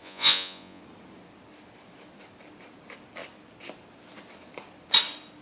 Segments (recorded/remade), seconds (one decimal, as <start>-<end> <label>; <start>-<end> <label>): 0.0-0.8 remade; 0.8-5.4 recorded